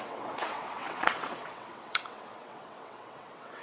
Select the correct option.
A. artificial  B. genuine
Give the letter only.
A